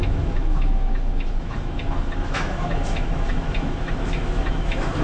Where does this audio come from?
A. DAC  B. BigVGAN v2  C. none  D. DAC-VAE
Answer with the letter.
D